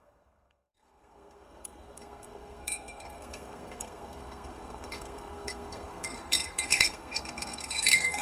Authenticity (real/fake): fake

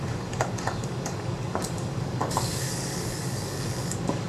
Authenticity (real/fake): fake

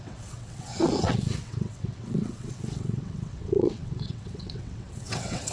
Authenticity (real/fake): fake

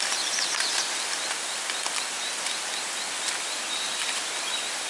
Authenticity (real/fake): real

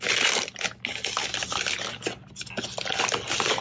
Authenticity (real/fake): real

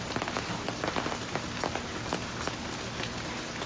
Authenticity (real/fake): real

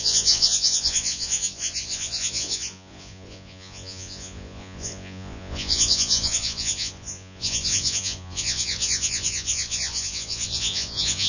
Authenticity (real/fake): fake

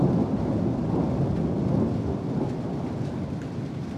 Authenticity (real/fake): real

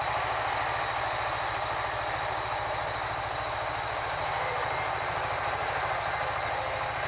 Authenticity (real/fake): real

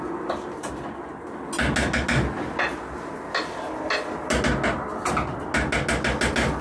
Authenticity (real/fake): real